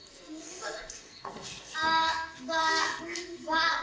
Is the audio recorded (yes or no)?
no